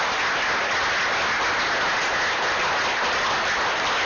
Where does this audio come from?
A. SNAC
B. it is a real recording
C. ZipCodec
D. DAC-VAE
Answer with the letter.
B